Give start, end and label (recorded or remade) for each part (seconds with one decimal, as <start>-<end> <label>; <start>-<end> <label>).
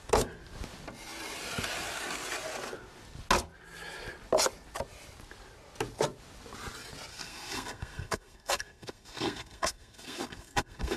0.0-7.1 recorded; 7.1-11.0 remade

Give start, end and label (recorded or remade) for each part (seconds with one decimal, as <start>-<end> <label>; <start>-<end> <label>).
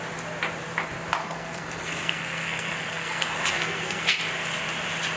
0.0-1.2 recorded; 1.2-4.2 remade; 4.2-5.2 recorded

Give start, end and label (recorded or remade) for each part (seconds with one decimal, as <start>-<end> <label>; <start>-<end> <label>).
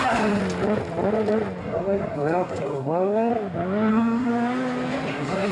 0.0-0.4 remade; 0.4-1.6 recorded; 1.6-3.3 remade; 3.3-3.9 recorded; 3.9-4.3 remade; 4.3-5.1 recorded; 5.1-5.5 remade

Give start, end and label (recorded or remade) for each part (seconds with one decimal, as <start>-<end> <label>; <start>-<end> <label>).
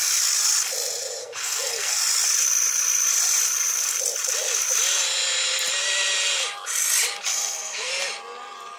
0.0-1.2 recorded; 1.2-2.0 remade; 2.0-7.3 recorded; 7.3-7.9 remade; 7.9-8.8 recorded